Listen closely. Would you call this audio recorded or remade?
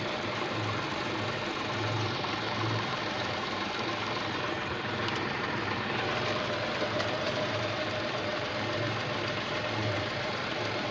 remade